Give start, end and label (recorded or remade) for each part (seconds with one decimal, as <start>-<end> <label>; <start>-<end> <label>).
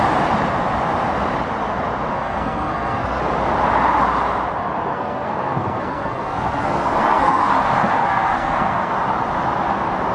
0.0-2.1 recorded; 2.1-3.2 remade; 3.2-4.9 recorded; 4.9-7.5 remade; 7.5-8.0 recorded; 8.0-8.9 remade; 8.9-10.1 recorded